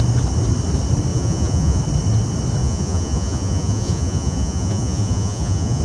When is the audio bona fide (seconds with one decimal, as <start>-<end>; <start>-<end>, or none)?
0.0-1.1; 1.8-2.6